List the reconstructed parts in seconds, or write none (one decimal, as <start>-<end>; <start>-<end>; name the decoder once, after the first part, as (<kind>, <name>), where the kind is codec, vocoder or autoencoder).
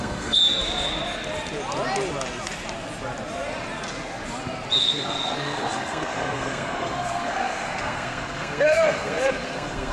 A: 0.0-0.4 (codec, SNAC); 4.8-9.9